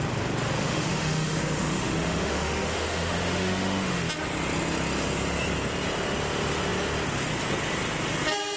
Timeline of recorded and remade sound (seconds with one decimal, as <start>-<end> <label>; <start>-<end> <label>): 0.0-0.6 recorded; 0.6-4.1 remade; 4.1-8.6 recorded